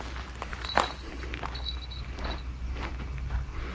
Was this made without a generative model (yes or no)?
yes